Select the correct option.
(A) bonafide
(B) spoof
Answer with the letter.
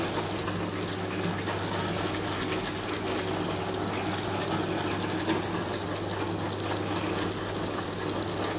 A